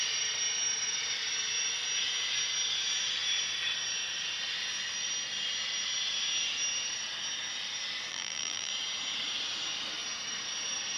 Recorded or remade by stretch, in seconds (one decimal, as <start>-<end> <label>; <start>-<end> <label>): 0.0-8.1 recorded; 8.1-8.7 remade; 8.7-11.0 recorded